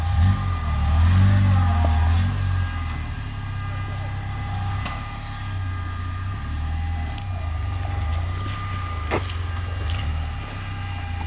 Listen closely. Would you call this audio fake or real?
real